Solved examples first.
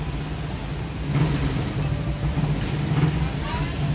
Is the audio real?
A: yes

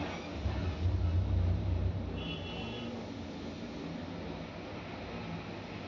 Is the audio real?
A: yes